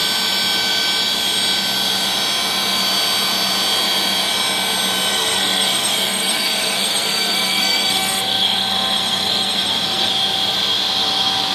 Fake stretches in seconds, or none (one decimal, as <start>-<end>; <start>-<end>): 5.1-10.1